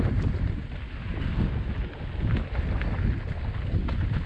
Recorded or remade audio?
recorded